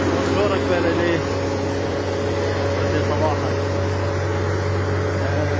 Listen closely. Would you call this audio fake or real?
real